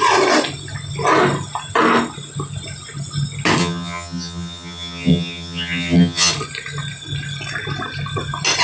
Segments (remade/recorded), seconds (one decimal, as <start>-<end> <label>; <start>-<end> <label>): 0.0-3.6 recorded; 3.6-6.3 remade; 6.3-8.6 recorded